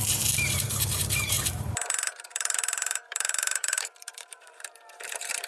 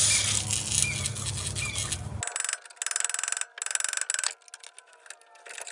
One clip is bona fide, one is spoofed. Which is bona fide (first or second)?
second